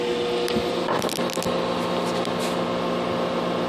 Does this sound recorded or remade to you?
recorded